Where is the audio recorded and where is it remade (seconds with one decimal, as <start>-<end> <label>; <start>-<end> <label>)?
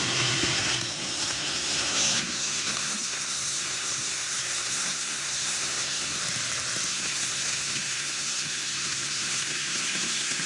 0.0-6.2 remade; 6.2-6.9 recorded; 6.9-10.5 remade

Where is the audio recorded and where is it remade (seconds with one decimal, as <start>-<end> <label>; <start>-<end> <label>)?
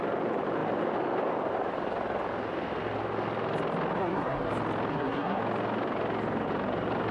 0.0-4.0 recorded; 4.0-4.5 remade; 4.5-4.9 recorded; 4.9-5.4 remade; 5.4-7.1 recorded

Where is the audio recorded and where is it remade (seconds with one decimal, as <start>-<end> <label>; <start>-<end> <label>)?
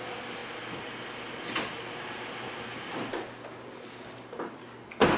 0.0-5.2 recorded